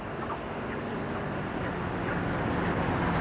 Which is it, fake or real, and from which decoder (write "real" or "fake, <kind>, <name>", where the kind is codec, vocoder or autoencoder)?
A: real